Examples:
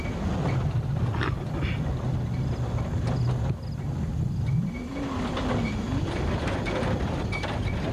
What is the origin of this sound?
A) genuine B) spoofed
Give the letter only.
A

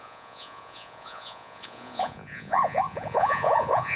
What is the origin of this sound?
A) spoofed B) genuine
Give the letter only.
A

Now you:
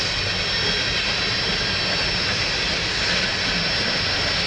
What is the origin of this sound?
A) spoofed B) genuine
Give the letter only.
B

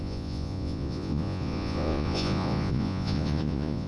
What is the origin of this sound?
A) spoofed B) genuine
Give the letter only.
A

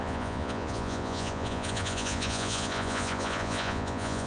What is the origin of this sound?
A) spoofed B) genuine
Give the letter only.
A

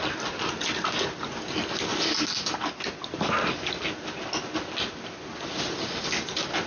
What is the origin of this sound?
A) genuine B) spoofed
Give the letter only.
A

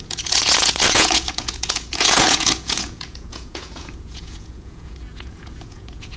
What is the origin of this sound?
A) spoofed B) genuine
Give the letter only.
A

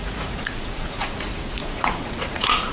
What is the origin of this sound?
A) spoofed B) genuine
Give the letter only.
A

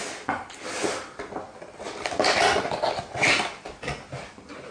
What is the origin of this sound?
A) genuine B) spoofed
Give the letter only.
A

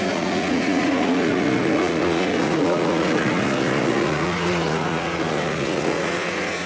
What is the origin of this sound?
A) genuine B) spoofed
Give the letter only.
B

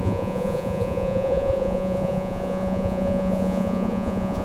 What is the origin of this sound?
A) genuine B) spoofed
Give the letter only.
B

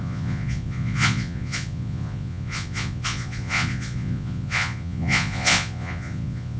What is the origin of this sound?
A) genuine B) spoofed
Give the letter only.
B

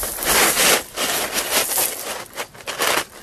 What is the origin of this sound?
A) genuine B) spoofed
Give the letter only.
A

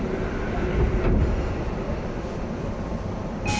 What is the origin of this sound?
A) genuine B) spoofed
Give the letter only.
A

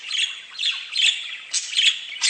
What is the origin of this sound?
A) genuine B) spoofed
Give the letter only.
A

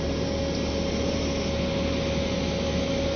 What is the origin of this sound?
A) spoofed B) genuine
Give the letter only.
B